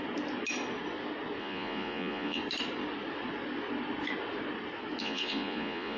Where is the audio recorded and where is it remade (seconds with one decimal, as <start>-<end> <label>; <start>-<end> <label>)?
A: 0.0-1.4 recorded; 1.4-2.4 remade; 2.4-5.0 recorded; 5.0-6.0 remade